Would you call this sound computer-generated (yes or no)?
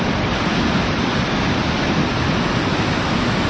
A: no